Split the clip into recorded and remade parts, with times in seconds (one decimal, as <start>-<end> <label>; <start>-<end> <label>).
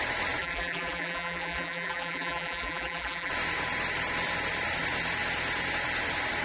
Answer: 0.0-0.4 recorded; 0.4-3.3 remade; 3.3-6.4 recorded